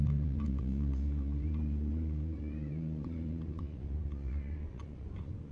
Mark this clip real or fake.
fake